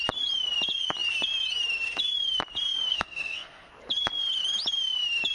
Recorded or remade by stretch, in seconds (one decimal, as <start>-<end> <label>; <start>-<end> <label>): 0.0-2.9 recorded; 2.9-3.7 remade; 3.7-5.3 recorded